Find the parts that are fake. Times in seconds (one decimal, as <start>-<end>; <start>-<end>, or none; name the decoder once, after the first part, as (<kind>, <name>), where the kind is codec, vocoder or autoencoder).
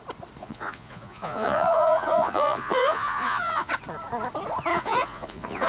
0.4-3.7 (vocoder, Vocos); 4.7-5.7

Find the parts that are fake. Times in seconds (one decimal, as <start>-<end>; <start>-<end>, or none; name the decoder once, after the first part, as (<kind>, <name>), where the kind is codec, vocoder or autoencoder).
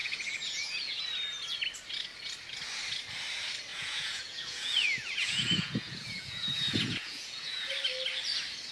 0.0-1.0 (vocoder, Vocos); 3.7-7.7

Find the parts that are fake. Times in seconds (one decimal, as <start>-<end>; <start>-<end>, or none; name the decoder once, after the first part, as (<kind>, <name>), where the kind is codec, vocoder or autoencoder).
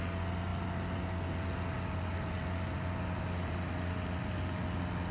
none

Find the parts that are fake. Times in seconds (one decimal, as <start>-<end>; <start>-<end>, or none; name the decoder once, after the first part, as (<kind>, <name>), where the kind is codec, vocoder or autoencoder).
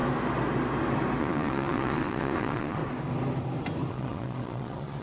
1.2-2.8 (vocoder, Vocos); 3.9-5.0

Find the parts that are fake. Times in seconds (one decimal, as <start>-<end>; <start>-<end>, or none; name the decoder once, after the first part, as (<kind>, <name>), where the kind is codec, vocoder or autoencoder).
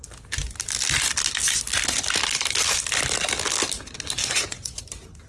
4.2-4.8 (vocoder, Vocos)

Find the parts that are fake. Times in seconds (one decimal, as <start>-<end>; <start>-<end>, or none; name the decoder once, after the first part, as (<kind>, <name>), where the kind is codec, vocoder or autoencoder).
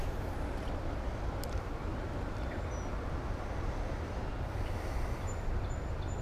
none